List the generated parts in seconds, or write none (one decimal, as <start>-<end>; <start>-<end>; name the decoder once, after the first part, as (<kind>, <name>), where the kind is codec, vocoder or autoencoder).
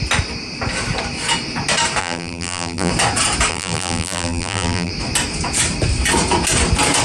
2.0-2.9 (vocoder, BigVGAN v2); 3.5-4.9